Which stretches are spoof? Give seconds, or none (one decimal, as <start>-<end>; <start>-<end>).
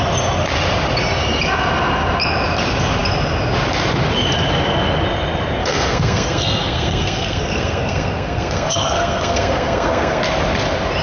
5.6-10.2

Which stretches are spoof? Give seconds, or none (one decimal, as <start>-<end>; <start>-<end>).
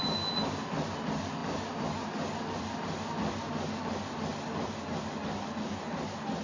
none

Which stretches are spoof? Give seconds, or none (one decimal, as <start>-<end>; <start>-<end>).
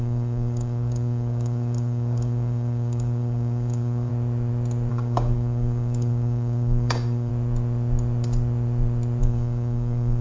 0.0-4.1; 4.9-7.3; 9.2-10.2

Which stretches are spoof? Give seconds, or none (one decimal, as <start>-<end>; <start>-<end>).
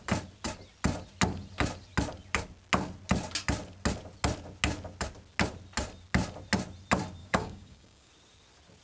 7.2-8.1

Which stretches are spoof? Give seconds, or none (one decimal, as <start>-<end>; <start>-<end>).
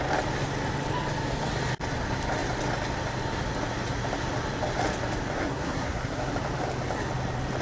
5.4-6.3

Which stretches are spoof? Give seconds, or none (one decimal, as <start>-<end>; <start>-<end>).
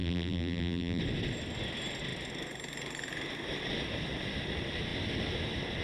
0.0-1.0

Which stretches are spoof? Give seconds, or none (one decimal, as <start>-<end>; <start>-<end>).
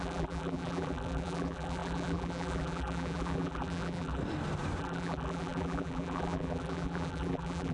0.0-4.2; 4.8-7.7